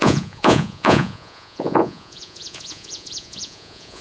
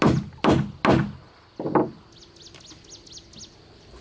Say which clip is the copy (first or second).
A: first